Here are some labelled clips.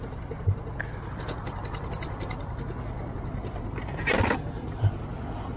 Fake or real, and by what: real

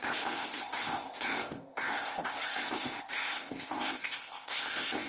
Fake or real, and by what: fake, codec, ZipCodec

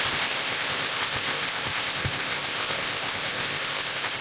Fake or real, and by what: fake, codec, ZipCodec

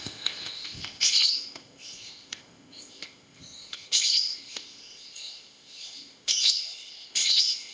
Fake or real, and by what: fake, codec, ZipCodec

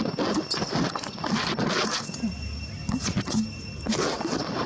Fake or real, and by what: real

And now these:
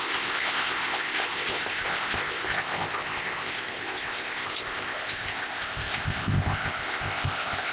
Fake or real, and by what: fake, codec, ZipCodec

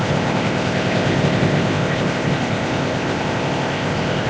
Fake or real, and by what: fake, codec, ZipCodec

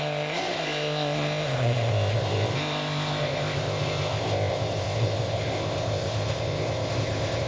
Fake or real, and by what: fake, codec, ZipCodec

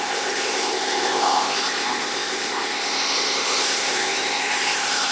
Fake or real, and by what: fake, codec, ZipCodec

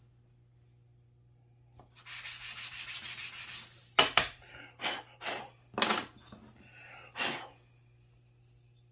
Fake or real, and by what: real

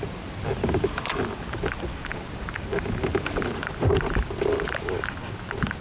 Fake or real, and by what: real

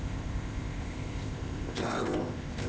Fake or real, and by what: fake, codec, ZipCodec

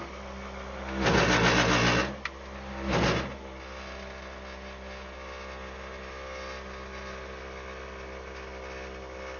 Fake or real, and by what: real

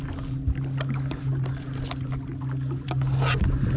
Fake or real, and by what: real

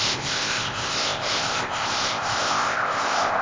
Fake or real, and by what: fake, codec, ZipCodec